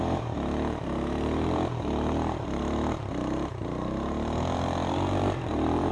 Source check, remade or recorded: remade